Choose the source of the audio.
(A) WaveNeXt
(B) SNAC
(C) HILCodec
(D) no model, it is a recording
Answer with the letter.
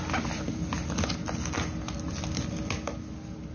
D